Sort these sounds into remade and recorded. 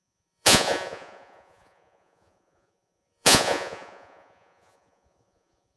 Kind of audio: remade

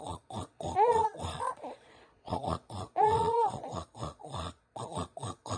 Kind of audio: remade